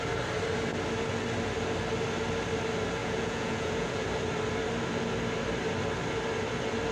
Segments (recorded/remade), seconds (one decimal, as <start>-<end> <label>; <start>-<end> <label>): 0.0-3.0 recorded; 3.0-4.0 remade; 4.0-6.9 recorded